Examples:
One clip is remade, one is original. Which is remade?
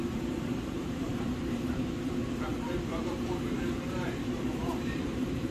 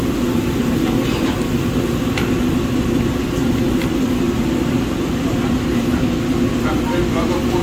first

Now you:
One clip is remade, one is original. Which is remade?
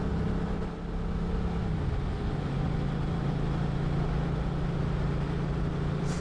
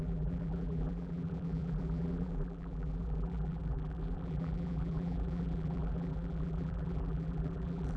second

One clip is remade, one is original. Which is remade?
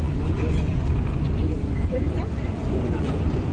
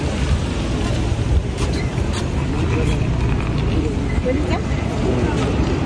first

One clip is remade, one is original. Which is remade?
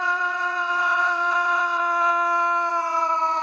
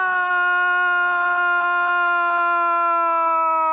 first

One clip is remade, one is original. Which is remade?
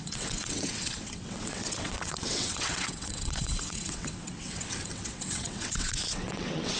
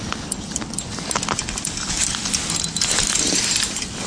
first